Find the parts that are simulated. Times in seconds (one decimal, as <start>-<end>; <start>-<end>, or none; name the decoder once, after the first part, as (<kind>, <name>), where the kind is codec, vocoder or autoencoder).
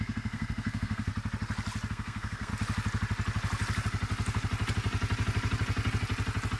0.0-1.1 (codec, SNAC); 1.9-2.5